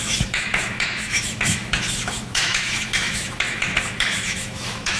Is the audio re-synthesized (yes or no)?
yes